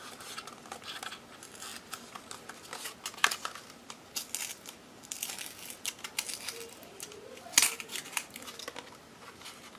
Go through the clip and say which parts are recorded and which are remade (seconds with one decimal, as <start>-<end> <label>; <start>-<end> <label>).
0.0-9.8 recorded